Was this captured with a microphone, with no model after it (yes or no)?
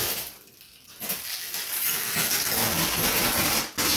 yes